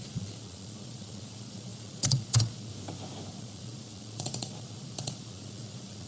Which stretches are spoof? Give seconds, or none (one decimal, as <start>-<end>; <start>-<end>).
0.0-2.7; 3.3-6.1